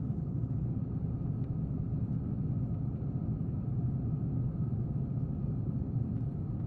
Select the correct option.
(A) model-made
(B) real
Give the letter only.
B